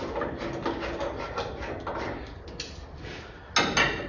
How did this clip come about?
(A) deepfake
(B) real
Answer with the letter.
B